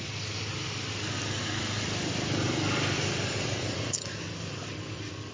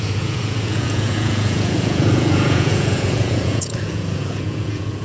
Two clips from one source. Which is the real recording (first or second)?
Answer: first